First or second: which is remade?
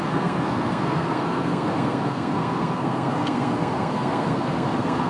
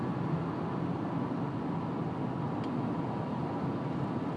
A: first